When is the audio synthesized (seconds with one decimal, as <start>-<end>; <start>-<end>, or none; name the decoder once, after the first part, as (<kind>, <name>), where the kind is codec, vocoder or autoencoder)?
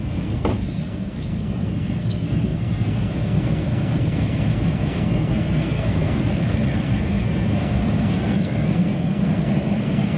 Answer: 0.0-10.2 (codec, SNAC)